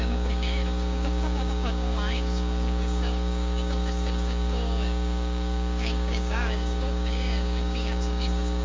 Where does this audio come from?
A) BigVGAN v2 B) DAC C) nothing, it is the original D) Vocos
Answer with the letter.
B